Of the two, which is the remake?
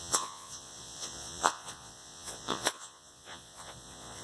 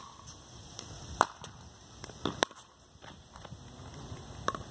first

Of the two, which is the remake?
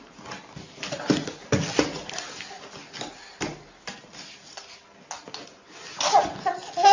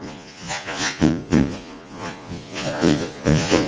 second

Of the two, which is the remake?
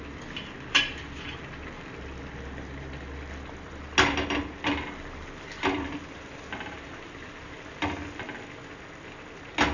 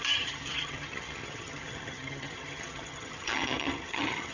second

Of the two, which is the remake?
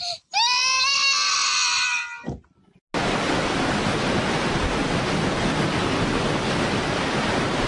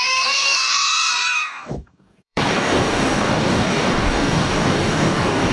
second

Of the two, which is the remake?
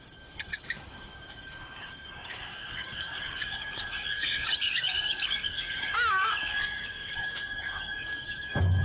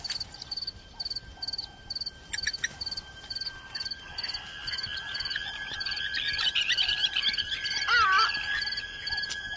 first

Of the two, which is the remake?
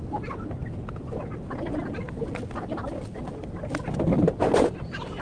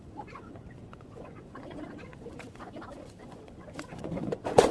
second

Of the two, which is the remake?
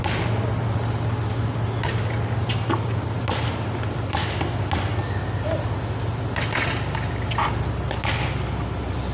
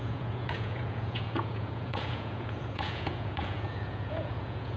second